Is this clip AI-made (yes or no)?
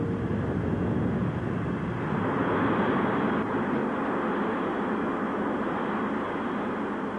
no